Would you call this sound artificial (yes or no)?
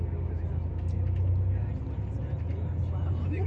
no